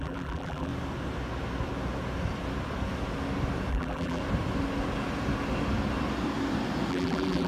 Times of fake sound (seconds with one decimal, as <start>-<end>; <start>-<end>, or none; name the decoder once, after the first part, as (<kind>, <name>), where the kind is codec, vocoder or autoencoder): 0.0-0.7 (vocoder, BigVGAN v2); 3.7-4.2; 6.9-7.5